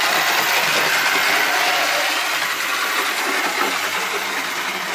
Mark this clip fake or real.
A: real